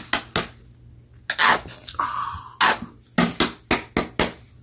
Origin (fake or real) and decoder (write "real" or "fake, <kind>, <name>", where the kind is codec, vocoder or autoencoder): real